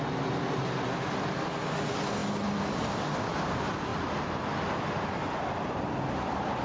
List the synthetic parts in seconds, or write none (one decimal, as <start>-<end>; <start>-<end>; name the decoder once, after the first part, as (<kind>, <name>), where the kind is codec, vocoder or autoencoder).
none